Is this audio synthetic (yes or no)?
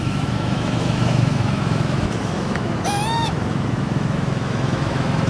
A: yes